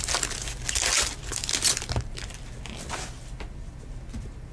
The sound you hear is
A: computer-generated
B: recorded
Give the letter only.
B